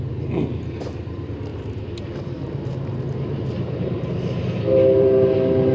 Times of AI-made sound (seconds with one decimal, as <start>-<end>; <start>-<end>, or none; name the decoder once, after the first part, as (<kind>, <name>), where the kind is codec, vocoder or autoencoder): 0.0-5.7 (vocoder, BigVGAN v2)